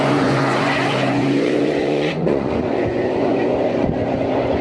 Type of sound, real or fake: fake